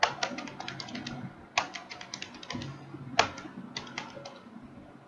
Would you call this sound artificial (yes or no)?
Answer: no